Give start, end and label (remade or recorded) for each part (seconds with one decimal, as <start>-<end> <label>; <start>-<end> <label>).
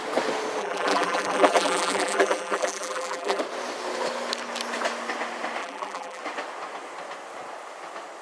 0.0-0.6 recorded; 0.6-3.4 remade; 3.4-5.6 recorded; 5.6-6.2 remade; 6.2-8.2 recorded